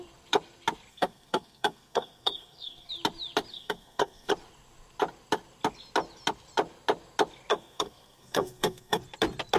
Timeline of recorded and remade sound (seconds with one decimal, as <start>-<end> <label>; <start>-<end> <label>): 0.0-0.9 recorded; 0.9-2.9 remade; 2.9-3.5 recorded; 3.5-4.3 remade; 4.3-7.5 recorded; 7.5-9.0 remade; 9.0-9.6 recorded